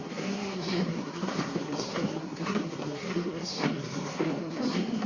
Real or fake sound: fake